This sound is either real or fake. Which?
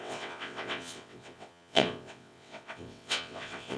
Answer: fake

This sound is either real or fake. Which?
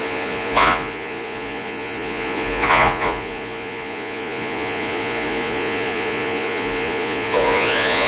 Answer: fake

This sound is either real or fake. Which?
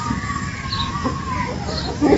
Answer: real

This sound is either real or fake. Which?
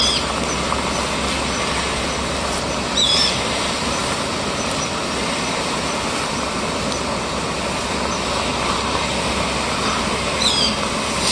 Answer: real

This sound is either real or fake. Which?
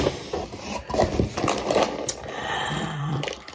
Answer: fake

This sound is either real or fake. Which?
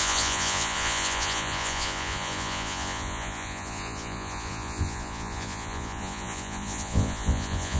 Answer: fake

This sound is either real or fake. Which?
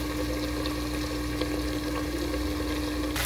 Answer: real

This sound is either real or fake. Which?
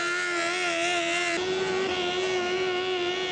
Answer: real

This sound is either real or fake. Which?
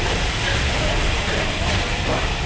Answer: fake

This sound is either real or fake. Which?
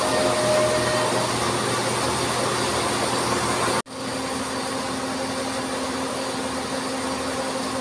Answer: real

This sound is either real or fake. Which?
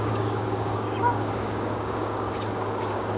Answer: fake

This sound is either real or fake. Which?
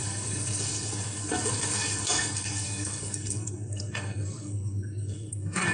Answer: fake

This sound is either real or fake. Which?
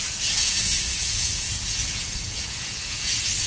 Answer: fake